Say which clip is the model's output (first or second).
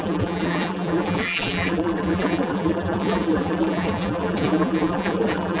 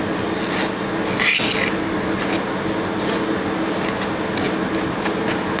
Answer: first